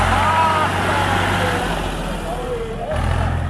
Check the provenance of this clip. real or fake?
real